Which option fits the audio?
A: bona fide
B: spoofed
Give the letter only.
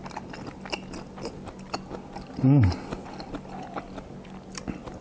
A